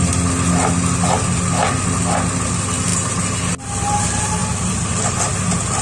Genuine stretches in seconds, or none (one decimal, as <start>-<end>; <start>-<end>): 0.0-4.4; 5.3-5.8